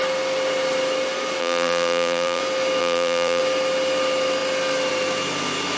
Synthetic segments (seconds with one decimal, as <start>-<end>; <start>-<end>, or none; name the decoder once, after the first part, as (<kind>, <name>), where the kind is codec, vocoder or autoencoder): 1.4-2.4 (vocoder, BigVGAN v2); 2.8-3.4